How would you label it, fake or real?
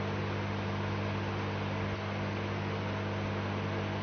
real